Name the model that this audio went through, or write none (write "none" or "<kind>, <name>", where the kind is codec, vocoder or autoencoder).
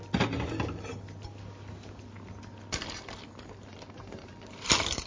none